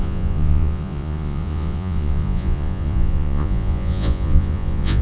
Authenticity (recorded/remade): remade